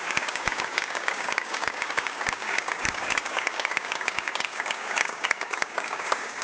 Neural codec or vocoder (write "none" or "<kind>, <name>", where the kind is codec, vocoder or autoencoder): codec, DAC